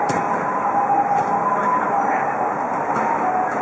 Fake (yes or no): no